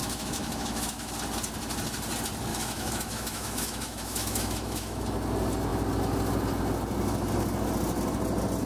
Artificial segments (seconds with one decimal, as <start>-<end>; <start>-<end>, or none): 0.0-1.1; 2.5-5.0